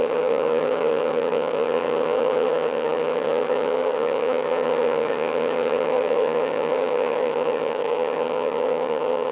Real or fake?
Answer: fake